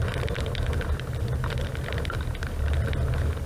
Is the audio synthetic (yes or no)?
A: no